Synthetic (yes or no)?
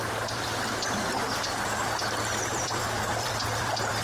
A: yes